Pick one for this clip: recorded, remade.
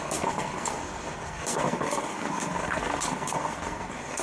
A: remade